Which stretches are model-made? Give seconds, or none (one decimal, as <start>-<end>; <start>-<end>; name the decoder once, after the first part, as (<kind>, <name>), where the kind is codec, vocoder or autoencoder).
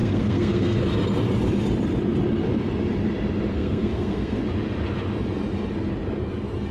0.0-0.8 (codec, SNAC); 3.5-4.4